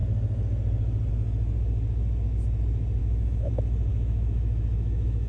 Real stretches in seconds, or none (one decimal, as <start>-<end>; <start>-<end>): 0.0-3.0; 3.5-3.9